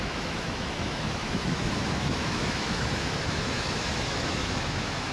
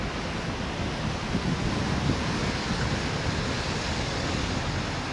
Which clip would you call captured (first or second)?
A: second